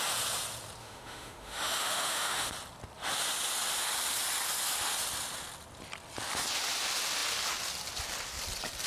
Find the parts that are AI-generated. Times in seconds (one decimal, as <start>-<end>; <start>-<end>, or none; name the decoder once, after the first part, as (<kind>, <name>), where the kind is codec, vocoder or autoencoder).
0.8-2.5 (autoencoder, DAC-VAE)